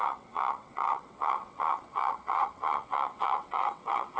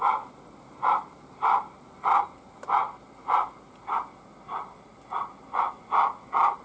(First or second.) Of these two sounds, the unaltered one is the second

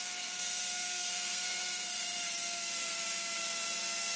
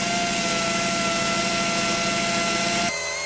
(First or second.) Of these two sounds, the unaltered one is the second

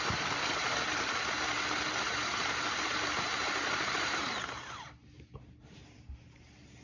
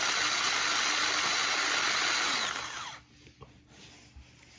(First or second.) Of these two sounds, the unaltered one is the second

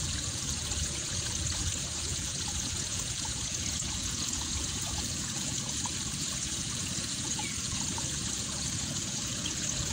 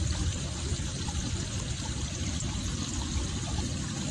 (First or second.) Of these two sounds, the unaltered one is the second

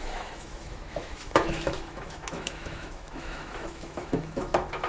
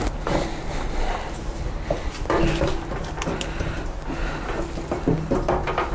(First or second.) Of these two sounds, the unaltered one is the second